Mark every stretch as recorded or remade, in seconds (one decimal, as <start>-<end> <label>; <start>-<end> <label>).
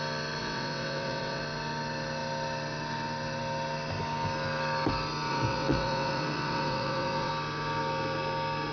0.0-0.4 recorded; 0.4-1.4 remade; 1.4-5.3 recorded; 5.3-7.3 remade; 7.3-8.7 recorded